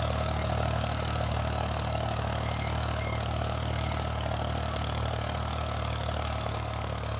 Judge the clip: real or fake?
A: fake